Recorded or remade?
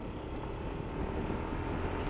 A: recorded